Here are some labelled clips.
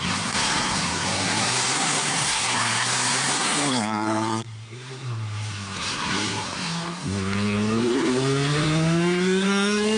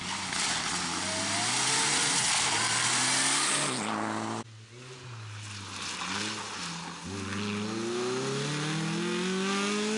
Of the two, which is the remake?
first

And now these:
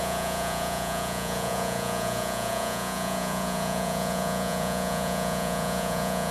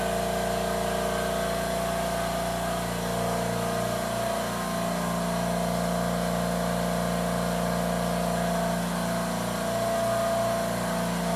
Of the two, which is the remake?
first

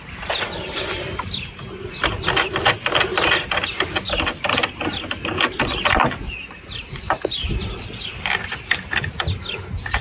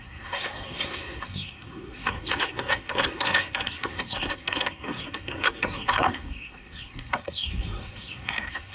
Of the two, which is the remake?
second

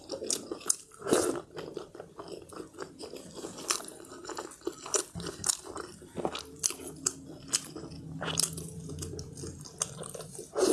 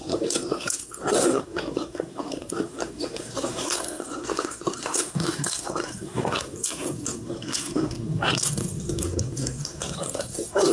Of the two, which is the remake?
second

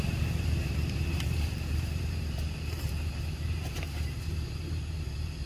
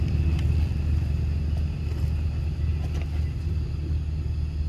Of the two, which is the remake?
first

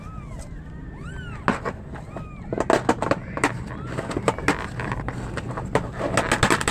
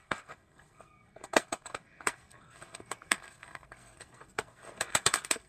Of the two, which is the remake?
second